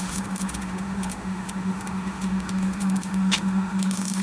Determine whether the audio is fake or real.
fake